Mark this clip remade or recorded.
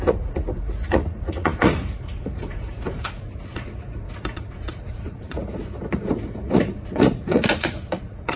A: remade